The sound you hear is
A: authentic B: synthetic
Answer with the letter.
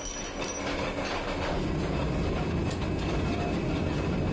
A